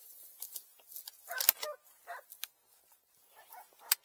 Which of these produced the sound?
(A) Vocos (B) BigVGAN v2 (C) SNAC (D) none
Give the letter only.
D